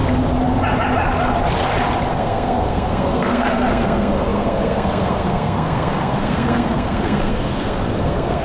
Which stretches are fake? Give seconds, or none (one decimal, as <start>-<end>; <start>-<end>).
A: 2.1-8.4